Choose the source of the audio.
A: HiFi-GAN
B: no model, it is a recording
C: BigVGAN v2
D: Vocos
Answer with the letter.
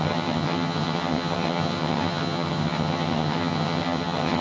A